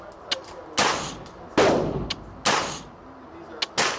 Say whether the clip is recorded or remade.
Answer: recorded